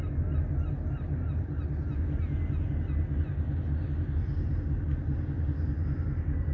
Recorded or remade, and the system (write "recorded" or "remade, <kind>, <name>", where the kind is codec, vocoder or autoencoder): recorded